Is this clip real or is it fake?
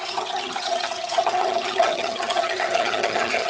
fake